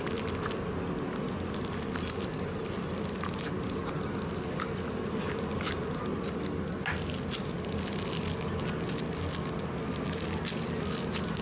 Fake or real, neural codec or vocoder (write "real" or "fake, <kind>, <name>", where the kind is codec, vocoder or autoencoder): real